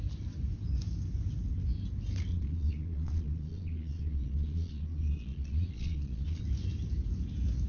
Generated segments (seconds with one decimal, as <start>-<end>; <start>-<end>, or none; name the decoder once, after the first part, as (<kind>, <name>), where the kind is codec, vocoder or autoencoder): 2.3-6.4 (vocoder, Vocos)